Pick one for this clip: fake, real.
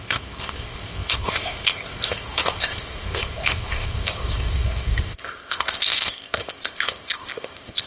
fake